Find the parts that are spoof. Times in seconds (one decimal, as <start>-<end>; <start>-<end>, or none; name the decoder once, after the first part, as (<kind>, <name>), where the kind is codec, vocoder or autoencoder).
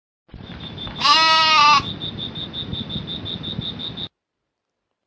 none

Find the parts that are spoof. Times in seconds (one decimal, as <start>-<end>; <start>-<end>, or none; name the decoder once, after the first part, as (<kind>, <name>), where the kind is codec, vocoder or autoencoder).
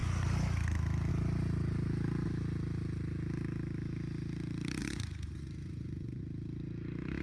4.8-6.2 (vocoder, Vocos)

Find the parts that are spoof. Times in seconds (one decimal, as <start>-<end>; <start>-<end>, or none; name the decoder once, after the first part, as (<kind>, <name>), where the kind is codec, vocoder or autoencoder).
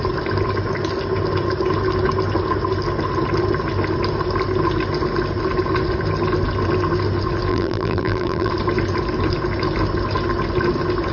7.5-8.5 (vocoder, BigVGAN v2)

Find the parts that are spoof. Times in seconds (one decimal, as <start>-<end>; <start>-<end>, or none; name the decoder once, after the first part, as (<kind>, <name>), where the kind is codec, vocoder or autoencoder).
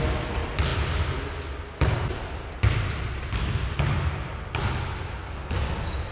none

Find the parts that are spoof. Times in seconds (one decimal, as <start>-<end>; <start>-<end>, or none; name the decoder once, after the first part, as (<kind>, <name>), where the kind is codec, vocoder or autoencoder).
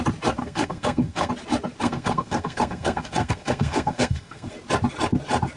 0.4-1.3 (codec, SNAC); 1.8-4.5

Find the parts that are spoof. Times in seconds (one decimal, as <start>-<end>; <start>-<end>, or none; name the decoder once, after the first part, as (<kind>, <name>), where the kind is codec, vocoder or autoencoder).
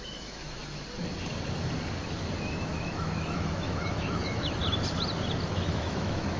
0.0-0.6 (autoencoder, DAC-VAE); 2.7-4.6; 5.5-6.4